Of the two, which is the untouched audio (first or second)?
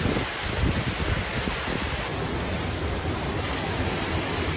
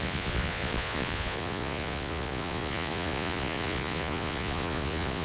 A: first